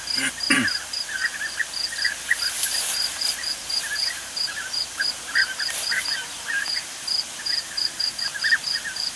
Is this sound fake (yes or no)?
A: no